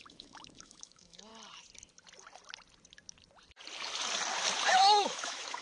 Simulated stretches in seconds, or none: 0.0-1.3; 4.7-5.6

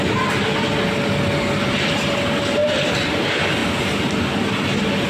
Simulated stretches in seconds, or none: none